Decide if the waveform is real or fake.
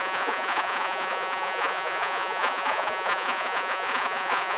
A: fake